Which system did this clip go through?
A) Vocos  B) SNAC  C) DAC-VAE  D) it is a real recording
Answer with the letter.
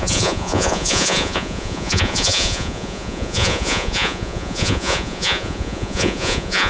A